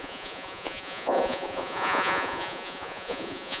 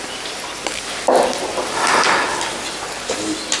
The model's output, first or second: first